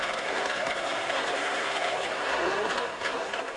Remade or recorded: remade